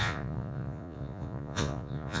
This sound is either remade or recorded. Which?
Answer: remade